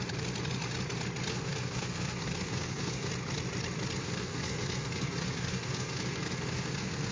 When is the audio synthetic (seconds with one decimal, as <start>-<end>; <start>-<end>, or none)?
1.3-3.1; 4.0-7.1